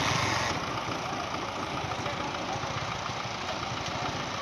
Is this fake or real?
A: real